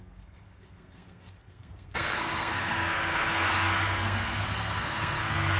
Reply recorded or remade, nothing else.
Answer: remade